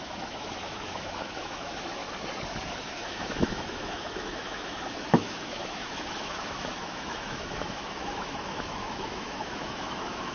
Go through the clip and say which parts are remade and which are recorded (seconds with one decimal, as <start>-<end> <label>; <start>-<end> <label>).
0.0-2.0 remade; 2.0-2.8 recorded; 2.8-10.3 remade